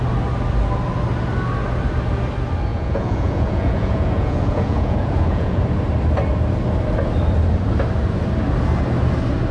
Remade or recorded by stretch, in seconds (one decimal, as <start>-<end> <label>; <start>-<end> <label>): 0.0-2.7 recorded; 2.7-5.6 remade; 5.6-9.5 recorded